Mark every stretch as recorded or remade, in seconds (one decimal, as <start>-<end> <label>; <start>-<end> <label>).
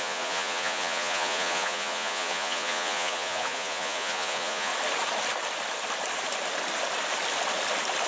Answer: 0.0-4.7 remade; 4.7-8.1 recorded